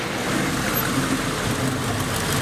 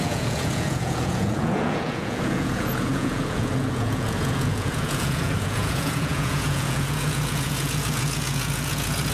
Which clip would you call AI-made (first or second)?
second